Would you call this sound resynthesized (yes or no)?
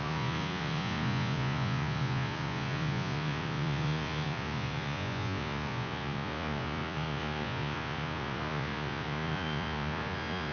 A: yes